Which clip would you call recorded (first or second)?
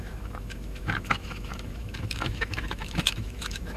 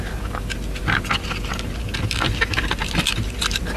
second